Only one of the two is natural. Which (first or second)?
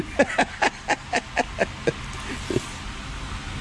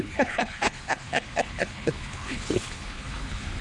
first